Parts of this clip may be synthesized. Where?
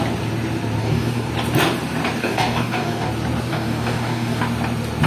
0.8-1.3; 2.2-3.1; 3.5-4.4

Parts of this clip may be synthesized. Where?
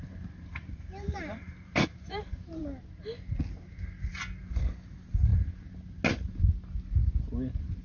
0.0-2.6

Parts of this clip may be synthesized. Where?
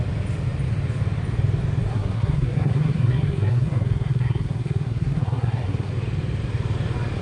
1.8-5.9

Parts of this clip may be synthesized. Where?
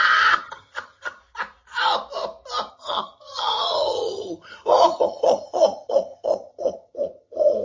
0.0-1.2; 2.7-7.6